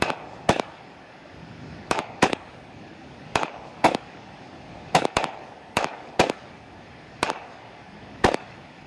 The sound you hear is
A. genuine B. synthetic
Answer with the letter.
B